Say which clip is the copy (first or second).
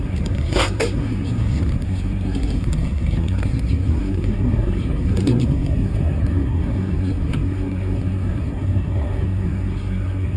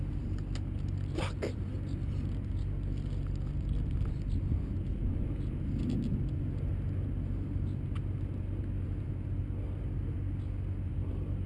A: first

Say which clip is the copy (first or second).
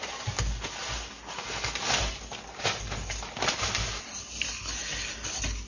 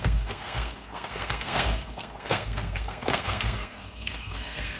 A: second